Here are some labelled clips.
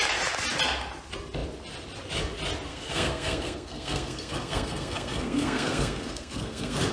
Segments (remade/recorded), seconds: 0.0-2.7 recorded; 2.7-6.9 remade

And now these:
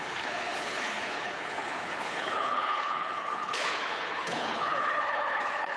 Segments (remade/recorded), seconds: 0.0-5.8 remade

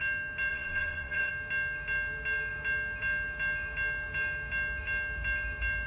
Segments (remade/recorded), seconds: 0.0-0.5 recorded; 0.5-1.3 remade; 1.3-5.9 recorded

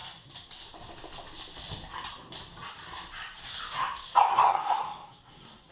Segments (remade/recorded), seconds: 0.0-4.3 recorded; 4.3-5.7 remade